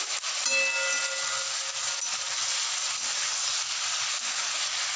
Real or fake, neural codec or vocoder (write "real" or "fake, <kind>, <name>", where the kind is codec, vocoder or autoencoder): real